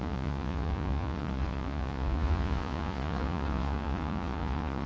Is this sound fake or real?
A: fake